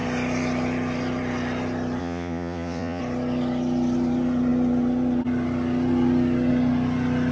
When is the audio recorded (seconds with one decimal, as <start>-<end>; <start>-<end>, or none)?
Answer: 0.0-2.0; 3.0-7.3